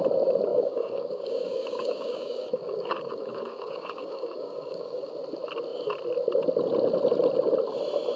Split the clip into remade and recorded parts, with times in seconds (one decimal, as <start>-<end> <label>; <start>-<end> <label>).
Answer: 0.0-0.5 recorded; 0.5-5.1 remade; 5.1-8.2 recorded